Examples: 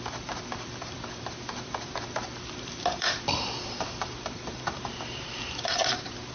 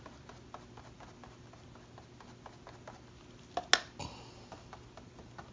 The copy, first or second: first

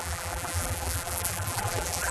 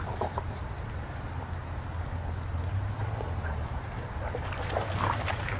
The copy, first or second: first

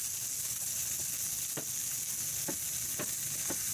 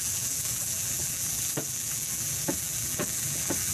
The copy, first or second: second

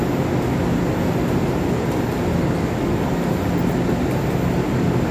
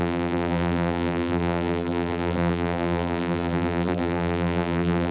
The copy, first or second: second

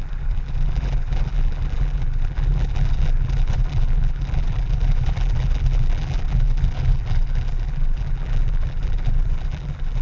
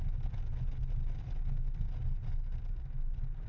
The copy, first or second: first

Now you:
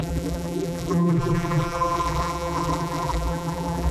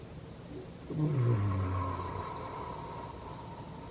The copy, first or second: first